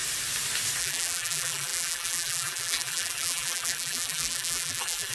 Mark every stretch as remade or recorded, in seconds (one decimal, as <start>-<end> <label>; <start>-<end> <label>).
0.0-0.8 recorded; 0.8-5.1 remade